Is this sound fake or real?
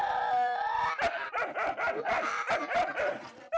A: fake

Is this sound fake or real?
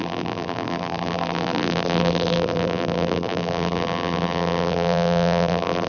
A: fake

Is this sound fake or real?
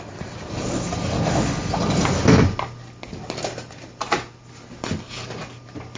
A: real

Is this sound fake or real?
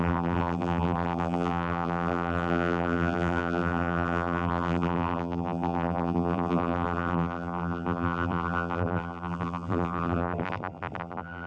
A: fake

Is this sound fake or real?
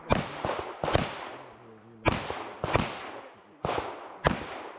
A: real